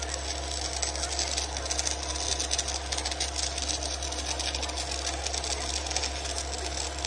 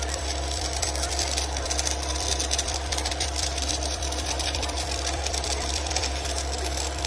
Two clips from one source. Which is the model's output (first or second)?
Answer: second